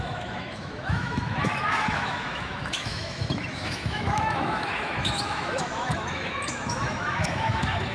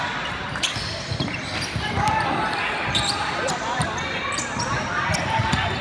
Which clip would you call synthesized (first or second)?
first